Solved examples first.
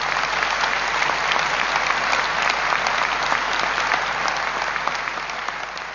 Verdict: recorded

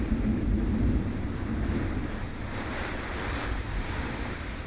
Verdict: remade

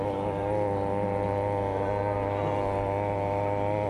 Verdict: recorded